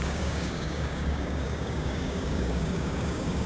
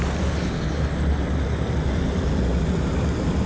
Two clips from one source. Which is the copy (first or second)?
first